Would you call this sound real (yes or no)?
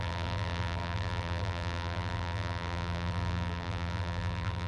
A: no